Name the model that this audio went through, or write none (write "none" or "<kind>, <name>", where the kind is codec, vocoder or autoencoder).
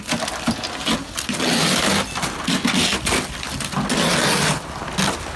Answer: none